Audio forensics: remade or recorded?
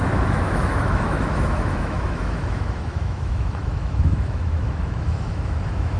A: remade